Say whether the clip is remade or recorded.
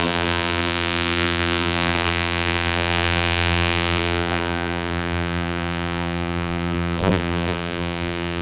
remade